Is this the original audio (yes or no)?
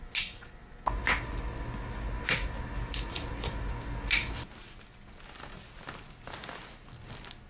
yes